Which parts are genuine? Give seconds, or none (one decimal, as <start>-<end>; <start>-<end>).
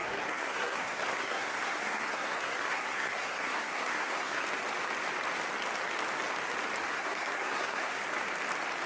4.4-6.9; 8.0-8.9